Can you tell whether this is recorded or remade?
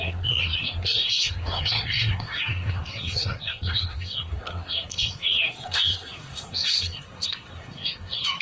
remade